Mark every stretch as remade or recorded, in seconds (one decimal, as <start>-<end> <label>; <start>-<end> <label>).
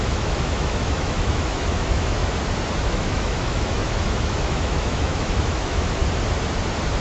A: 0.0-2.2 remade; 2.2-2.9 recorded; 2.9-6.0 remade; 6.0-7.0 recorded